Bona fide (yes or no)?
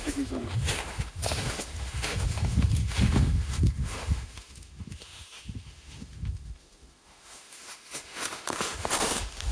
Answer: no